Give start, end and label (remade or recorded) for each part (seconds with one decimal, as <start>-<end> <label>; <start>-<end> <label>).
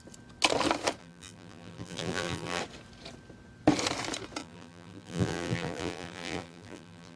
0.0-1.0 recorded; 1.0-2.6 remade; 2.6-4.4 recorded; 4.4-7.2 remade